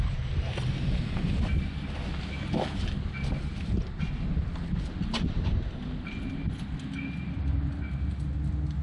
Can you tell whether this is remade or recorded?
recorded